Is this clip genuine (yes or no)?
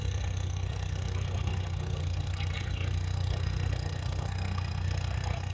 no